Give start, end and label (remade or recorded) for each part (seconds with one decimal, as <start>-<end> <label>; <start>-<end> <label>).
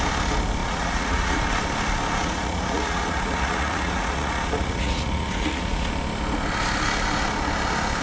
0.0-0.6 recorded; 0.6-1.4 remade; 1.4-2.2 recorded; 2.2-5.9 remade; 5.9-8.0 recorded